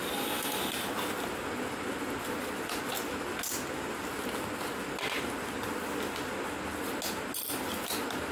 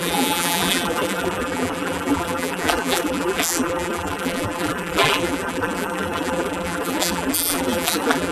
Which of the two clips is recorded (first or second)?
first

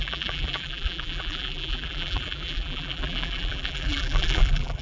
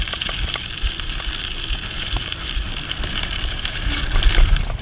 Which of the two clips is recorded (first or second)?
second